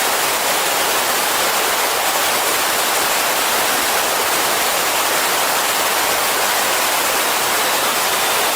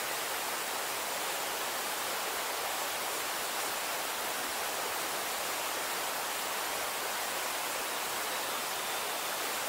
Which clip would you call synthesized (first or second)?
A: first